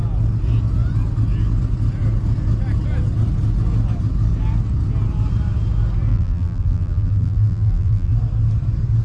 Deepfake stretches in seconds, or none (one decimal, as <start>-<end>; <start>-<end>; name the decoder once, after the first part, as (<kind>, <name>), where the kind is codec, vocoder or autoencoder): 6.1-8.1 (vocoder, BigVGAN v2)